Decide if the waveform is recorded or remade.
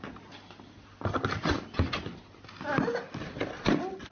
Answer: recorded